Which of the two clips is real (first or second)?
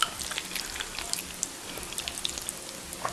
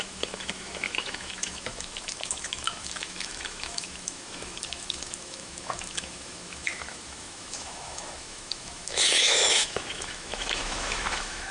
first